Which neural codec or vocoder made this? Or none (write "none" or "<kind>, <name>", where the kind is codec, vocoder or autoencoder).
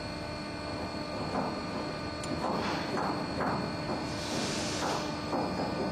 none